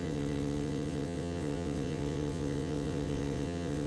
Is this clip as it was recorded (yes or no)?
no